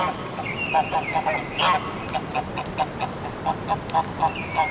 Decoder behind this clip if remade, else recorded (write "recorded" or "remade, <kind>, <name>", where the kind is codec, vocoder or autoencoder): recorded